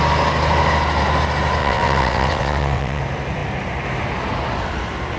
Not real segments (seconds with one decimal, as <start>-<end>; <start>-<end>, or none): 1.6-3.0